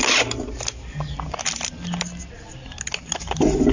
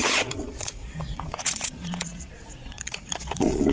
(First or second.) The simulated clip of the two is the second